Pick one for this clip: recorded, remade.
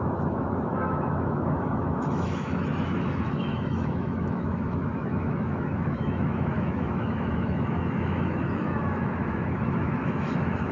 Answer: remade